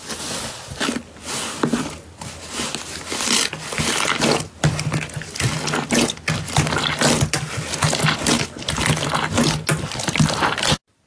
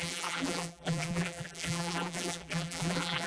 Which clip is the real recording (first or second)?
first